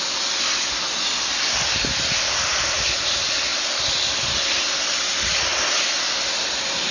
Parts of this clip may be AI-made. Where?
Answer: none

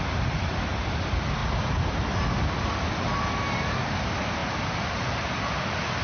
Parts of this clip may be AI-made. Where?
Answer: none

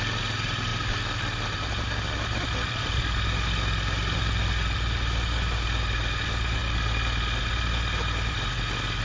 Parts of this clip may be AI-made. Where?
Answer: none

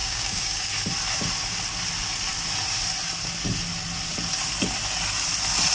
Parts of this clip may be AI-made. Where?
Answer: 0.0-0.7 (codec, DAC)

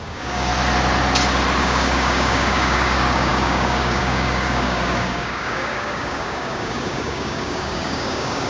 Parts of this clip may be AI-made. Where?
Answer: 0.0-0.5 (codec, DAC); 1.6-8.5

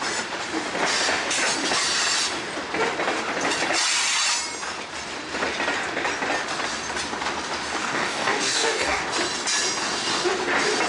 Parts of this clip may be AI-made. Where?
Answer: 7.8-9.0 (codec, DAC)

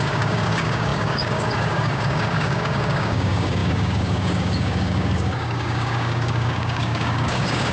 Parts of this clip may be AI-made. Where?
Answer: 0.0-7.7 (codec, DAC)

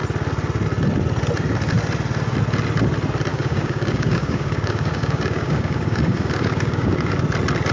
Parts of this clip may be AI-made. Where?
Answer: 3.3-7.1 (codec, DAC)